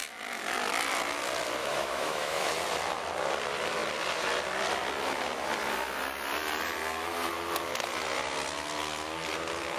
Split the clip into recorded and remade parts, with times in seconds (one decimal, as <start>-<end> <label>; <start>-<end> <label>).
0.0-1.6 recorded; 1.6-2.5 remade; 2.5-9.8 recorded